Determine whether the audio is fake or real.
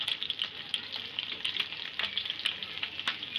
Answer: real